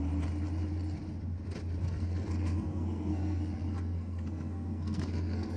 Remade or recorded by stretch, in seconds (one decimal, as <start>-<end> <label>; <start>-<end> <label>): 0.0-1.8 recorded; 1.8-5.6 remade

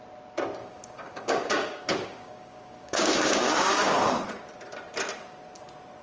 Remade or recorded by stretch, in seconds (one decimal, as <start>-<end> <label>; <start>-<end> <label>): 0.0-0.6 recorded; 0.6-4.2 remade; 4.2-6.0 recorded

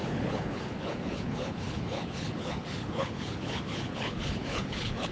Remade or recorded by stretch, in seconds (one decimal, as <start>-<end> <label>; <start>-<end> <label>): 0.0-5.1 remade

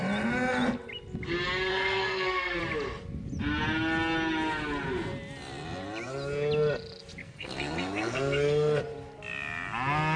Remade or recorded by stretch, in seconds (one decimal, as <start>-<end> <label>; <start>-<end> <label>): 0.0-1.7 recorded; 1.7-2.6 remade; 2.6-7.2 recorded; 7.2-8.8 remade; 8.8-10.2 recorded

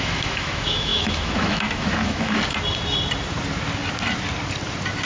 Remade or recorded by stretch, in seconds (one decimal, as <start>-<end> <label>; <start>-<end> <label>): 0.0-2.4 remade; 2.4-5.1 recorded

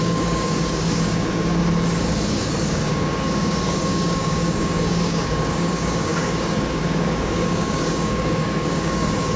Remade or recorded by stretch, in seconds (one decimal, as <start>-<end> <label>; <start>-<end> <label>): 0.0-1.6 remade; 1.6-2.3 recorded; 2.3-9.4 remade

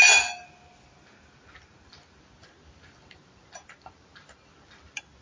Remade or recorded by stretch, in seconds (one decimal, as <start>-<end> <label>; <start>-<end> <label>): 0.0-5.2 recorded